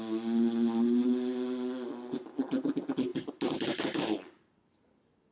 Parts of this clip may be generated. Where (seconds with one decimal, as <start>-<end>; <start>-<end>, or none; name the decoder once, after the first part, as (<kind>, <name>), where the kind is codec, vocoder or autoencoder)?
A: none